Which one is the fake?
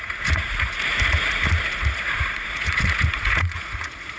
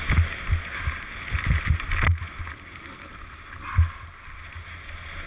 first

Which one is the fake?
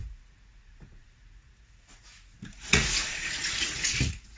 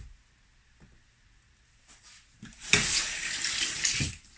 first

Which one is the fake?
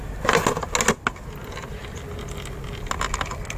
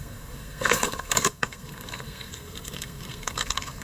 second